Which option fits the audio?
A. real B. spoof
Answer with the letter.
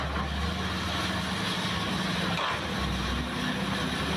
A